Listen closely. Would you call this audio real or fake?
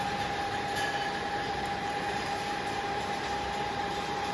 fake